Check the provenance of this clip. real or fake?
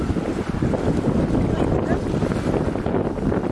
real